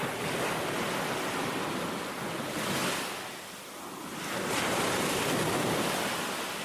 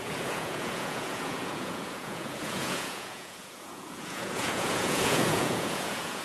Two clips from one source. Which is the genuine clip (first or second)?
first